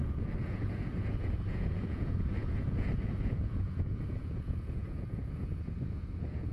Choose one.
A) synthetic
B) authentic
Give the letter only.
A